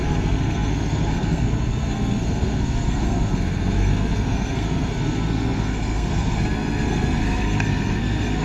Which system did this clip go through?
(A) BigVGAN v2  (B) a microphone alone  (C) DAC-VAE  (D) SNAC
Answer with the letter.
D